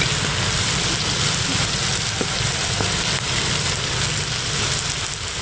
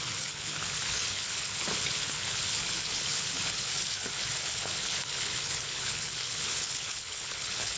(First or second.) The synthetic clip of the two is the second